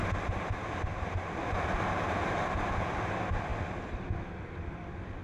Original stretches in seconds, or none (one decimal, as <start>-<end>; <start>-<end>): 0.0-5.2

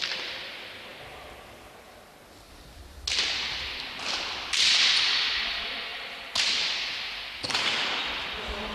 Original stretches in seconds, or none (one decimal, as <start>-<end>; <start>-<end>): 0.0-8.7

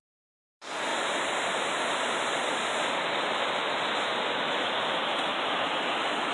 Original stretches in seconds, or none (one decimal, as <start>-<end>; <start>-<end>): 0.0-6.3

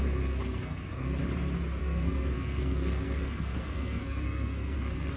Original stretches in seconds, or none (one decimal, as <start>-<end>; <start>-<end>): 1.2-1.8

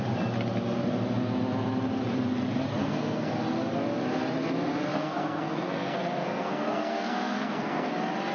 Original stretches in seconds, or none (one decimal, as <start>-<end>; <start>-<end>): 0.0-2.8; 3.3-4.9; 7.9-8.3